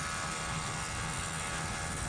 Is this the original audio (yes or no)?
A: yes